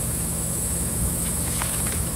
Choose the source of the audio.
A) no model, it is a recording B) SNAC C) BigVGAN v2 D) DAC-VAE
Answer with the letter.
D